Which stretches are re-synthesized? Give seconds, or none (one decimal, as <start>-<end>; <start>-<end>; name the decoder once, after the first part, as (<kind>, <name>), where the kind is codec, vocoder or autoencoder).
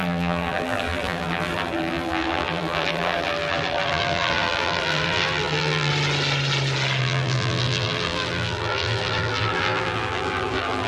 0.0-5.9 (vocoder, BigVGAN v2); 7.0-10.9